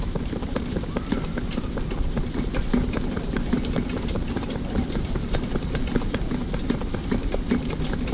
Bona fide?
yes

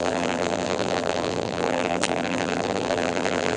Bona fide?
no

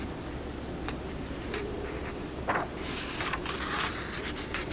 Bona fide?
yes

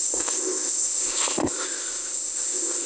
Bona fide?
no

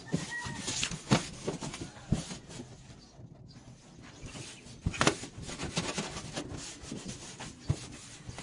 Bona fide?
yes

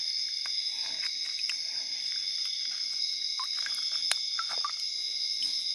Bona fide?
yes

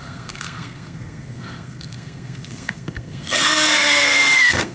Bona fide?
no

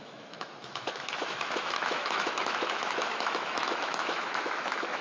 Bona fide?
no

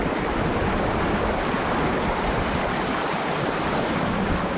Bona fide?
yes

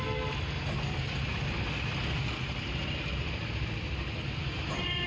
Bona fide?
yes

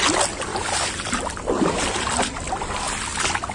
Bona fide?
yes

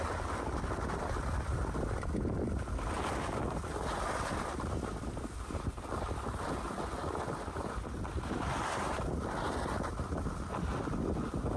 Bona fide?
yes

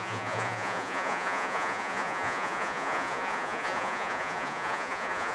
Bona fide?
no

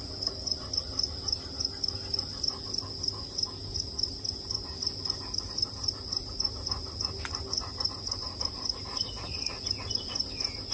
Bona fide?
yes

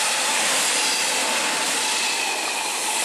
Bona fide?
no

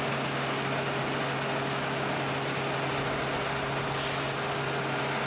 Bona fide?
yes